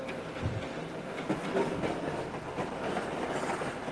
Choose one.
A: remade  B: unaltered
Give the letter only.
B